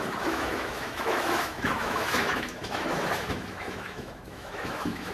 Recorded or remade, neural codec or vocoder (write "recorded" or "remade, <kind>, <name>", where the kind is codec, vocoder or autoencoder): remade, autoencoder, DAC-VAE